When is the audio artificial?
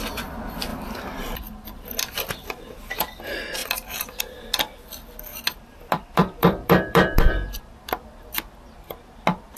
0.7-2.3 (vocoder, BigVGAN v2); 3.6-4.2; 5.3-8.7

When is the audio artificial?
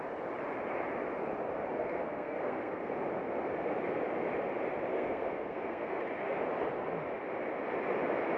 1.8-2.9 (codec, SNAC); 4.9-6.0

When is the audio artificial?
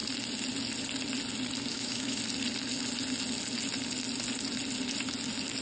1.7-2.2 (autoencoder, DAC-VAE)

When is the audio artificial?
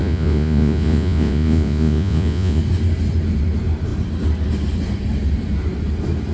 0.0-2.6 (vocoder, Vocos)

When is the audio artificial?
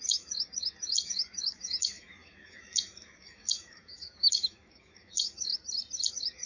0.0-5.5 (autoencoder, DAC-VAE); 6.1-6.5